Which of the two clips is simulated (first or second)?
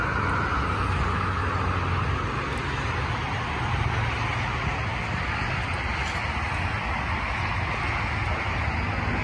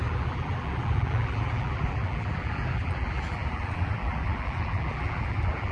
second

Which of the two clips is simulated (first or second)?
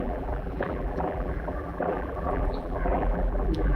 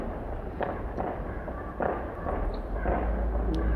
first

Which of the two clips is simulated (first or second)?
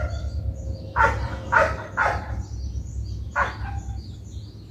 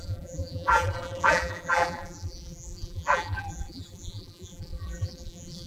second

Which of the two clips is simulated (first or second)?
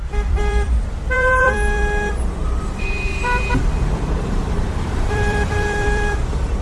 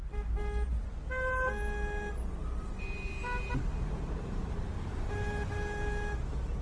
first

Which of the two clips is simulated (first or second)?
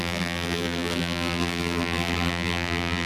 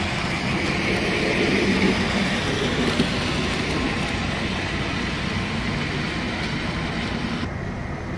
first